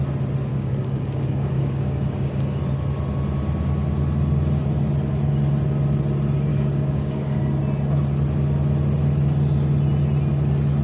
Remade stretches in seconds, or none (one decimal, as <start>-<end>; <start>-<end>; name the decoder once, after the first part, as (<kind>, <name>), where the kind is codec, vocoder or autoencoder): 0.5-2.6 (codec, DAC); 6.5-7.4